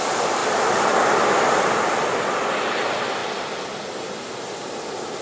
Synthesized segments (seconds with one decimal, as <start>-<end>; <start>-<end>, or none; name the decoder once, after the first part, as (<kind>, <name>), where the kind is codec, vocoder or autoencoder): 0.4-1.8 (vocoder, BigVGAN v2); 3.2-3.8